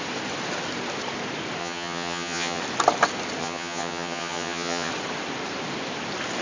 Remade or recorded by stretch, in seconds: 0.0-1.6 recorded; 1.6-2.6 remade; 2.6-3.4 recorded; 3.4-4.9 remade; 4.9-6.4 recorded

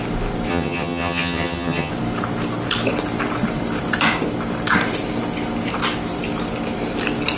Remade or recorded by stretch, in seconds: 0.0-0.5 recorded; 0.5-1.9 remade; 1.9-7.4 recorded

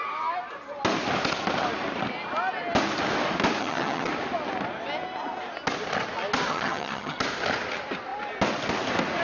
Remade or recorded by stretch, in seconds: 0.0-3.6 recorded; 3.6-4.1 remade; 4.1-6.5 recorded; 6.5-7.2 remade; 7.2-9.2 recorded

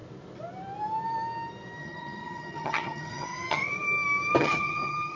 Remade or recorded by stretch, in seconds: 0.0-1.8 recorded; 1.8-3.6 remade; 3.6-4.4 recorded; 4.4-5.2 remade

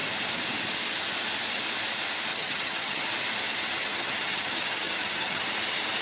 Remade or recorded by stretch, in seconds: 0.0-2.3 recorded; 2.3-3.1 remade; 3.1-3.8 recorded; 3.8-5.4 remade; 5.4-6.0 recorded

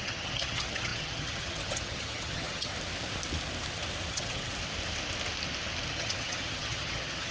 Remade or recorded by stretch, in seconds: 0.0-2.7 remade; 2.7-4.1 recorded; 4.1-4.5 remade; 4.5-5.9 recorded; 5.9-7.3 remade

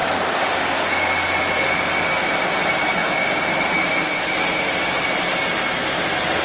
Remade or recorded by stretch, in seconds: 0.0-6.4 recorded

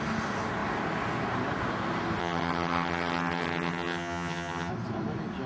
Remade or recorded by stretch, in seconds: 0.0-2.2 recorded; 2.2-4.7 remade; 4.7-5.5 recorded